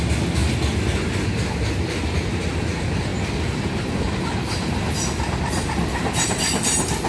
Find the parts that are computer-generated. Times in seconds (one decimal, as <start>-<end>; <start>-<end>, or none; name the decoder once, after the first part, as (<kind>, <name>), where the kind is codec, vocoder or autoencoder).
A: none